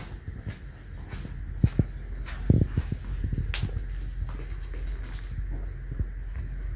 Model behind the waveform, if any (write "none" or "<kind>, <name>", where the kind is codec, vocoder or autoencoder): none